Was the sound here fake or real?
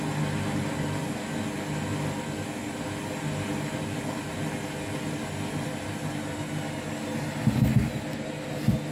real